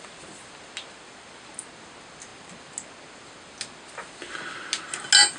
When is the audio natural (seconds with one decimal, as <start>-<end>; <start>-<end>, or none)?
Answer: 0.0-5.4